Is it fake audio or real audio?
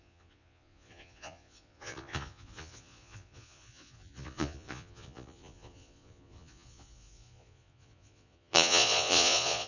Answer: fake